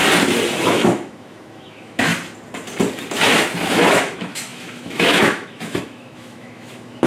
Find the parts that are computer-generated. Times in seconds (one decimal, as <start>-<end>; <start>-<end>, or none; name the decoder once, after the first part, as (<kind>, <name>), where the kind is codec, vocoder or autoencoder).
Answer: 0.6-2.1 (autoencoder, DAC-VAE); 3.7-7.1